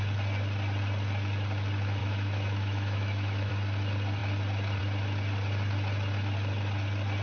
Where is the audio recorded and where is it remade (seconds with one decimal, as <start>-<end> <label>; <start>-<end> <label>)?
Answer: 0.0-2.0 recorded; 2.0-3.5 remade; 3.5-7.2 recorded